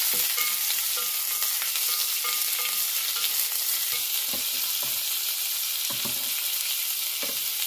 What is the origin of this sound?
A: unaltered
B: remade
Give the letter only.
A